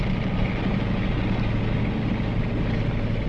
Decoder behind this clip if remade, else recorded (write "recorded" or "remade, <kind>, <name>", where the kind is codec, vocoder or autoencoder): recorded